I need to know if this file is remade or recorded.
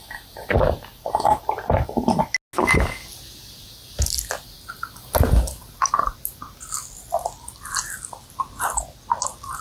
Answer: recorded